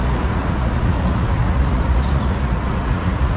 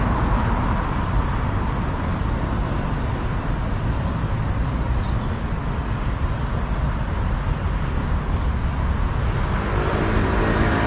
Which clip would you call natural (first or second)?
second